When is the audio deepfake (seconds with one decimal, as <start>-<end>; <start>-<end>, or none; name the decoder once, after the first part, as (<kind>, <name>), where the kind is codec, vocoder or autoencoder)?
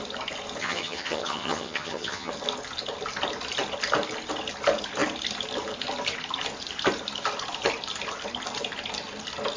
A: 0.6-2.3 (vocoder, HiFi-GAN)